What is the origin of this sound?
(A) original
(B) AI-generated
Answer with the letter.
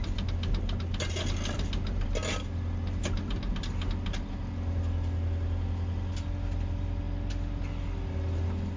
A